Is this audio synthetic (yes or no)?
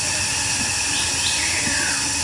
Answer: no